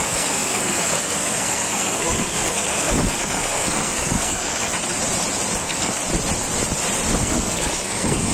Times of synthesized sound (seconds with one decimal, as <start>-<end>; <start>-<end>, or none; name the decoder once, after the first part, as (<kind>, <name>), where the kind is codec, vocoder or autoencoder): 0.0-4.7 (codec, SNAC); 5.6-6.0; 7.2-8.3